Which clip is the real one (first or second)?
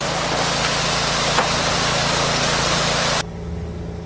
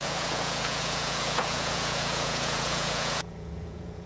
first